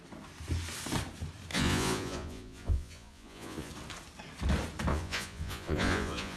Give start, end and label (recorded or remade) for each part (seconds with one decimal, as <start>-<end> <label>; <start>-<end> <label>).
0.0-1.5 recorded; 1.5-3.7 remade; 3.7-4.9 recorded; 4.9-6.4 remade